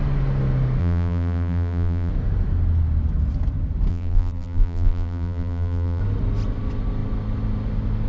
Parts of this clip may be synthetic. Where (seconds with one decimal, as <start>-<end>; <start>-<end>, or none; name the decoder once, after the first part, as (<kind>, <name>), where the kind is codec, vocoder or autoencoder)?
0.8-2.1 (vocoder, BigVGAN v2); 3.9-6.0